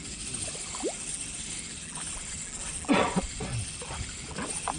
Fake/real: real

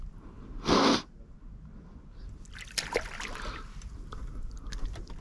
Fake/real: real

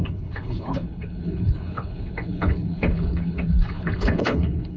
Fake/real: fake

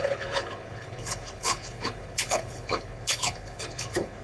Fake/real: fake